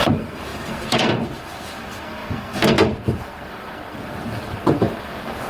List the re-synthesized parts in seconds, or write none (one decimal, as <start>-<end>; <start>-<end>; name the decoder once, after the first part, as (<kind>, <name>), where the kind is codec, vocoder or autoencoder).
0.0-5.5 (codec, SNAC)